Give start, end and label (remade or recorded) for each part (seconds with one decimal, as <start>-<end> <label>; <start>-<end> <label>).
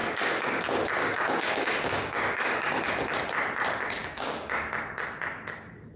0.0-0.6 remade; 0.6-1.0 recorded; 1.0-2.8 remade; 2.8-4.0 recorded; 4.0-4.7 remade; 4.7-6.0 recorded